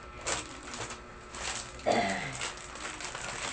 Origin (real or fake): real